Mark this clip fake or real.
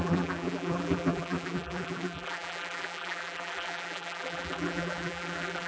fake